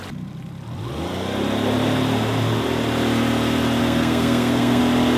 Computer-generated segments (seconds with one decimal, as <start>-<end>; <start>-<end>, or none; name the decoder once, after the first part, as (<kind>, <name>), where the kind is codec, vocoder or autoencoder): 3.8-4.8 (codec, SNAC)